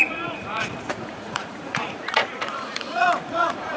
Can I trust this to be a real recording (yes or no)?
no